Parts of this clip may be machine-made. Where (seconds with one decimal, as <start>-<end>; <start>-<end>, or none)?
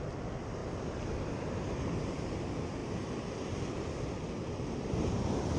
none